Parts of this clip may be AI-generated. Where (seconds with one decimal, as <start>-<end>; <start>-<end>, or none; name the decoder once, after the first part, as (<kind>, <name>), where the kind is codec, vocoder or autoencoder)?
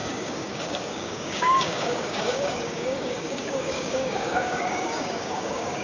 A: 0.0-5.8 (codec, DAC)